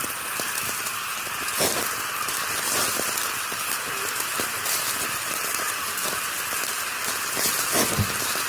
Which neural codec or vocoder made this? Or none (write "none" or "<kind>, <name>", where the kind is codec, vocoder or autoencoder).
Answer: none